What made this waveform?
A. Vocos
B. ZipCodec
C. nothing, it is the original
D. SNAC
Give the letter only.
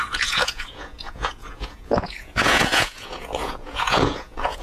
A